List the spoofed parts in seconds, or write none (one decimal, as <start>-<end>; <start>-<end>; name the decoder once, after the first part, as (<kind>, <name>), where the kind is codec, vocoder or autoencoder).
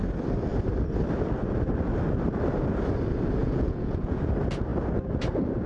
3.4-4.3 (vocoder, Vocos)